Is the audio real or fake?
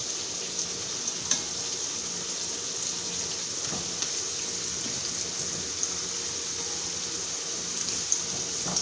real